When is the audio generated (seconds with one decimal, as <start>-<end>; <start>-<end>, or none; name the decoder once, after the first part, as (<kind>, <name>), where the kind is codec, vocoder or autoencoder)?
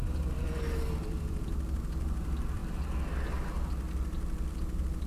0.0-2.6 (vocoder, BigVGAN v2)